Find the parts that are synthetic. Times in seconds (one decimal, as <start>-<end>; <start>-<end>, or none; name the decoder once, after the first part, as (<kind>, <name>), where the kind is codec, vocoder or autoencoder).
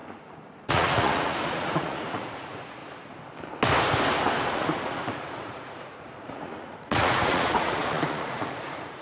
0.7-2.8 (vocoder, Vocos); 4.5-9.0